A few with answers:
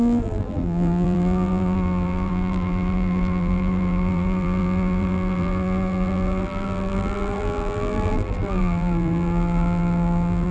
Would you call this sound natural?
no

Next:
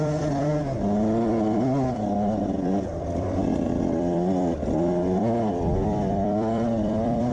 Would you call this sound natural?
no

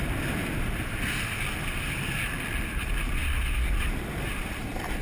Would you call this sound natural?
yes